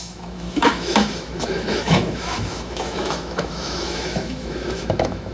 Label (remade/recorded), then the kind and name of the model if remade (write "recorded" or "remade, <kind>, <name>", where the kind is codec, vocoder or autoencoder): remade, autoencoder, DAC-VAE